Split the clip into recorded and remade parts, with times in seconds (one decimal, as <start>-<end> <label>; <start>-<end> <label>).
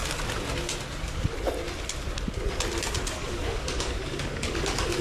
0.0-3.2 recorded; 3.2-5.0 remade